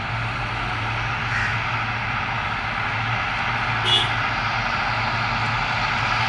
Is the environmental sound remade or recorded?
recorded